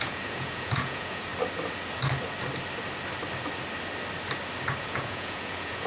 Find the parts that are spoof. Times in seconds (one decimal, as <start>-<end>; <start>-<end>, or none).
0.0-1.3; 4.8-5.9

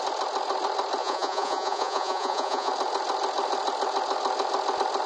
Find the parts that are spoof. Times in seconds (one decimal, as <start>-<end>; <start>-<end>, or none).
1.0-2.7

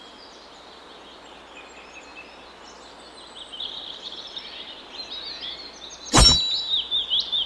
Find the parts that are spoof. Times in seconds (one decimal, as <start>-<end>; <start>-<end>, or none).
none

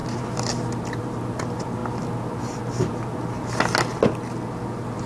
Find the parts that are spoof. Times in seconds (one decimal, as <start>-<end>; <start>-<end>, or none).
none

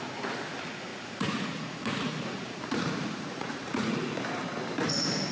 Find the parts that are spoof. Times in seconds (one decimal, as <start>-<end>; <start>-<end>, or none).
0.9-4.1

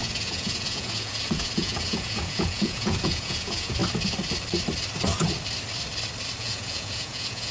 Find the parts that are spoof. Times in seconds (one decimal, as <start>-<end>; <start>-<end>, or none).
0.0-3.8; 6.4-7.5

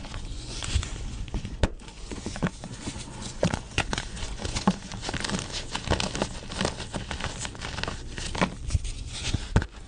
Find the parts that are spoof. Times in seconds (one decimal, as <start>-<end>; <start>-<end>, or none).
0.0-4.9; 8.8-9.9

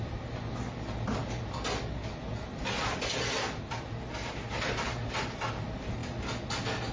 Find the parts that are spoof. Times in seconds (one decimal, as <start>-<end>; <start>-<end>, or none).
none